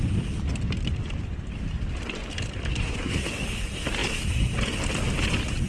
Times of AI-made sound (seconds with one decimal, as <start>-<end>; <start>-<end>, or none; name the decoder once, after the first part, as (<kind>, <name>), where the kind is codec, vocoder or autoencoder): 2.7-3.3 (codec, SNAC)